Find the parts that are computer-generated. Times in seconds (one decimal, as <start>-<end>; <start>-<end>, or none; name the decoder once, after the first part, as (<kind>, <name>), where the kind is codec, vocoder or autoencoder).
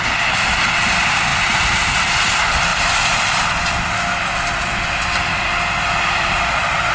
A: none